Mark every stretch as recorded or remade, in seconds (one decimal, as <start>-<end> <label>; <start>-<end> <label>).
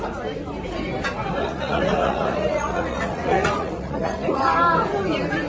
0.0-1.4 recorded; 1.4-4.4 remade; 4.4-5.5 recorded